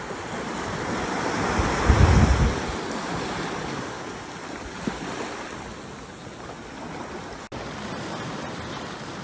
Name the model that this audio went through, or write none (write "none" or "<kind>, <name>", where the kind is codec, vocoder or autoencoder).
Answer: none